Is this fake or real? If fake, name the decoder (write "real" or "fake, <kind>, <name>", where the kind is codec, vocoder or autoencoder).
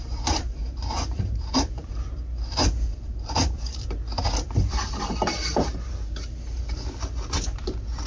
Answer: fake, vocoder, BigVGAN v2